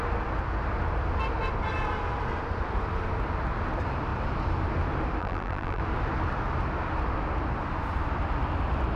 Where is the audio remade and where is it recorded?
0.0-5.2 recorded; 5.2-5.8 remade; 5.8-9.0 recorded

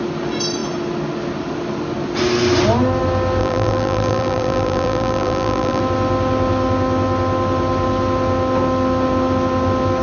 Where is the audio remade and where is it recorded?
0.0-3.4 recorded; 3.4-5.8 remade; 5.8-10.0 recorded

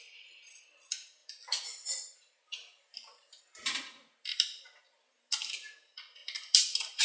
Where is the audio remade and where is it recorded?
0.0-1.2 recorded; 1.2-3.4 remade; 3.4-4.3 recorded; 4.3-5.3 remade; 5.3-6.2 recorded; 6.2-7.0 remade

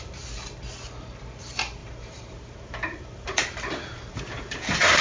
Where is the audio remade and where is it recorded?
0.0-1.8 recorded; 1.8-5.0 remade

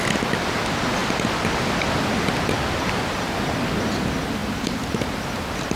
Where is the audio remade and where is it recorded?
0.0-4.4 recorded; 4.4-5.1 remade; 5.1-5.8 recorded

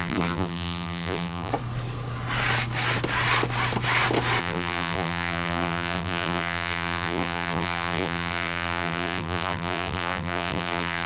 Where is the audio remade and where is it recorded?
0.0-1.5 remade; 1.5-4.4 recorded; 4.4-11.1 remade